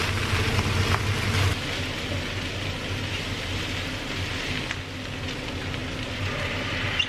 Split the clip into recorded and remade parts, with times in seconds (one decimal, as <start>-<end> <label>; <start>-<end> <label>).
0.0-5.8 recorded; 5.8-7.1 remade